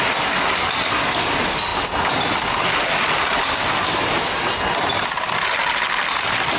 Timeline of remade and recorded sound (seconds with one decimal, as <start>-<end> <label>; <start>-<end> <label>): 0.0-6.6 recorded